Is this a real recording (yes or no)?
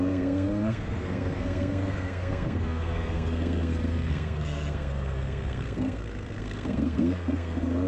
no